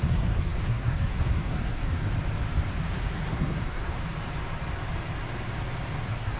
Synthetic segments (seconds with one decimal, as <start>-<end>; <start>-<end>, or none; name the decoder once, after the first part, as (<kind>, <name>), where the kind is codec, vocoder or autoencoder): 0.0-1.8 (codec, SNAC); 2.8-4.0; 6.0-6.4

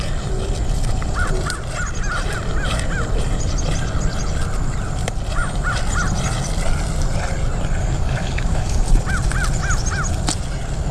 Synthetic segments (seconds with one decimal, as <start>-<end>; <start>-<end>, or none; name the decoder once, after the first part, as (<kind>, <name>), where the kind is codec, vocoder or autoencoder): 7.8-8.9 (codec, DAC)

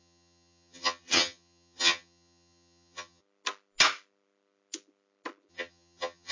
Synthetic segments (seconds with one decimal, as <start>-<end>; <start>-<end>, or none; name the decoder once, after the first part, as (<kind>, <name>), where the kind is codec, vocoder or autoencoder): 0.0-3.2 (vocoder, HiFi-GAN); 5.5-6.3

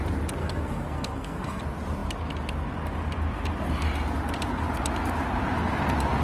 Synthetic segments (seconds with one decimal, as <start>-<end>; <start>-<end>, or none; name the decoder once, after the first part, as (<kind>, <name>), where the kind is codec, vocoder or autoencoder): 0.4-1.6 (codec, SNAC)

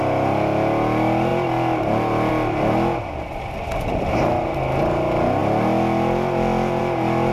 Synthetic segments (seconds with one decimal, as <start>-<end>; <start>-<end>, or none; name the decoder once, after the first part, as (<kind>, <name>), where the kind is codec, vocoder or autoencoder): none